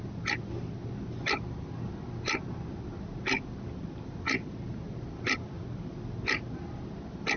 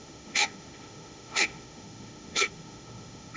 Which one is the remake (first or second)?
second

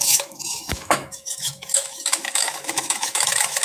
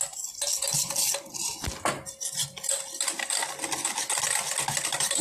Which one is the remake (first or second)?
first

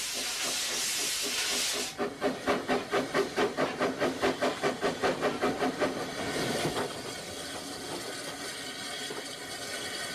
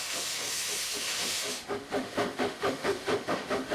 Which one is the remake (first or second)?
second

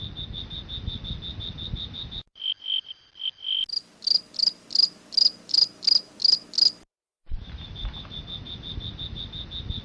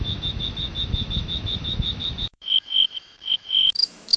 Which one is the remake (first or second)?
second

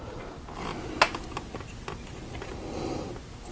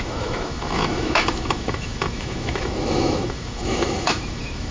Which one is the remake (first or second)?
second